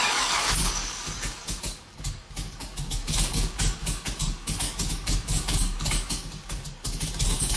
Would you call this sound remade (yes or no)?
yes